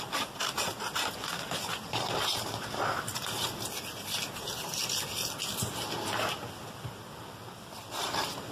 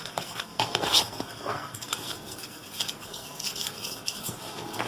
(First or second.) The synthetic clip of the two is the second